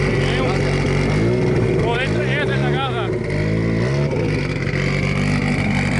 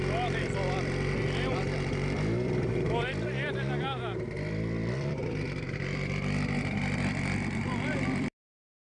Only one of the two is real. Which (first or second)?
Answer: first